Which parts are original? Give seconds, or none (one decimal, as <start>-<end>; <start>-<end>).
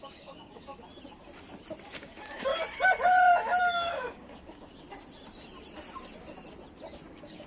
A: 0.7-1.9; 2.5-3.6; 4.7-7.1